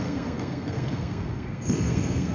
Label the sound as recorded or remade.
remade